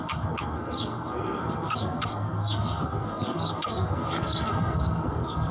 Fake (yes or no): yes